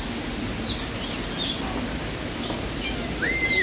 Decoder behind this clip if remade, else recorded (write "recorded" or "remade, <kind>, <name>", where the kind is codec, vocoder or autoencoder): recorded